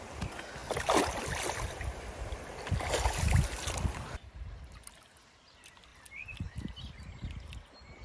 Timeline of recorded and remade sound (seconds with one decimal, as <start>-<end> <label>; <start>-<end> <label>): 0.0-0.6 recorded; 0.6-3.3 remade; 3.3-8.0 recorded